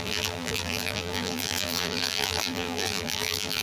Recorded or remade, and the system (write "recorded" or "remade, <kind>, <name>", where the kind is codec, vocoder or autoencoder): remade, vocoder, BigVGAN v2